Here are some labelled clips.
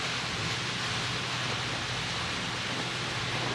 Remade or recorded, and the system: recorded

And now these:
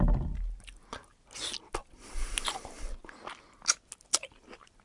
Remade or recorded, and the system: recorded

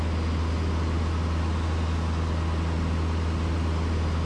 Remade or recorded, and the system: recorded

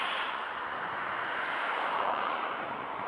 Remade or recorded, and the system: remade, vocoder, Vocos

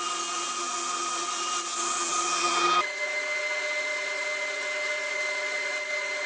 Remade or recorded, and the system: remade, vocoder, Vocos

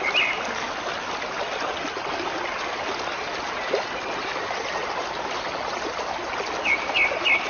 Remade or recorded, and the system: recorded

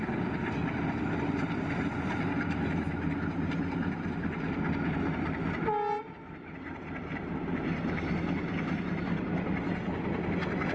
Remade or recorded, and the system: recorded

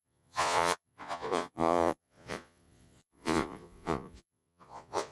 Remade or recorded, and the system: remade, vocoder, Vocos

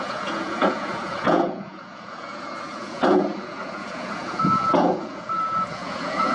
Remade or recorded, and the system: remade, vocoder, Vocos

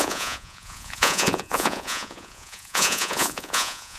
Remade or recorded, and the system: remade, vocoder, Vocos